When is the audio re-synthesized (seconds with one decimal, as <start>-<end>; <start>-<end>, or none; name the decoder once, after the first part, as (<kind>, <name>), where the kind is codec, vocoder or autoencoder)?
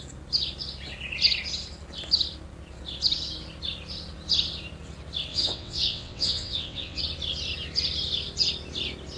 5.3-7.0 (vocoder, WaveNeXt)